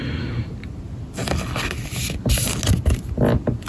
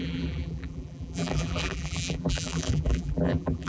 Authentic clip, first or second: first